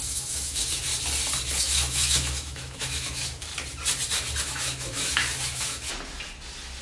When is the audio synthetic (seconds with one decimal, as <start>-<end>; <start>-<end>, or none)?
0.0-0.9; 1.6-3.5; 4.4-5.9